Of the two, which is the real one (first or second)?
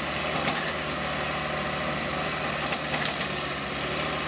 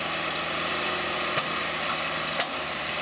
first